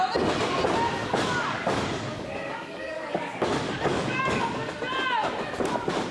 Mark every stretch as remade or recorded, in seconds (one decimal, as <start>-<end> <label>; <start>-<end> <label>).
0.0-1.0 recorded; 1.0-4.7 remade; 4.7-6.1 recorded